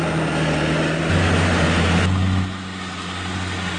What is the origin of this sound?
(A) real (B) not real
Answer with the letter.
A